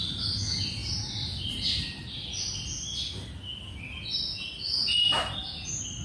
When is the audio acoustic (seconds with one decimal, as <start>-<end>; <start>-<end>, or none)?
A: 0.0-6.0